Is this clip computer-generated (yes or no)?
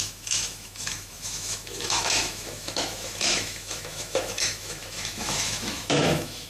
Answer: yes